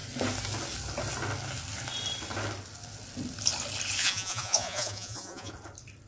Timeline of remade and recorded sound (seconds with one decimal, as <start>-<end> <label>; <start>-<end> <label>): 0.0-4.0 recorded; 4.0-5.5 remade; 5.5-6.1 recorded